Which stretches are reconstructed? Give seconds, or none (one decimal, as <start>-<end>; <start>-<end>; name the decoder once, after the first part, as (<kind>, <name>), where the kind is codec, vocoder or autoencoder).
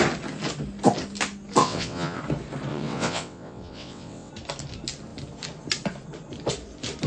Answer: 1.6-2.2 (vocoder, WaveNeXt); 2.7-4.3